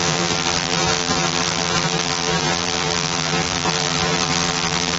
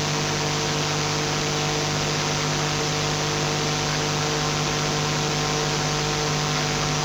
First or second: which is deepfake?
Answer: first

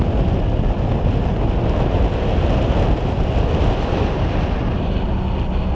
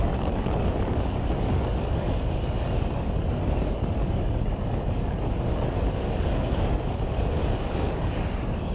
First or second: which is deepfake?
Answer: second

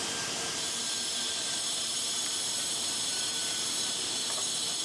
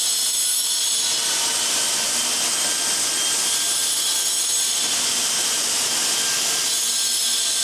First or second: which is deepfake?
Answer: first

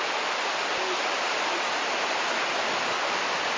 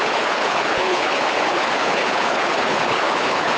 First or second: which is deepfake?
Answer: second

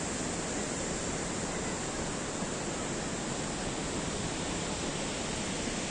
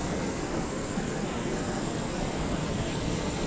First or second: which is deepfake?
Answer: second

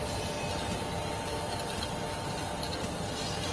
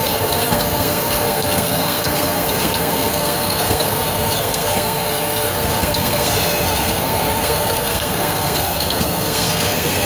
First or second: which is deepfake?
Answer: second